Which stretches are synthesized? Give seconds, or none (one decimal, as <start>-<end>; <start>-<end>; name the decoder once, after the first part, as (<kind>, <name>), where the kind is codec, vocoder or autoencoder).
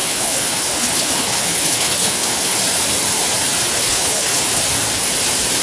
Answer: 0.0-2.6 (codec, HILCodec); 3.6-4.6